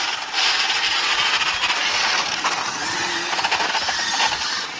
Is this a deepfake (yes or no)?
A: no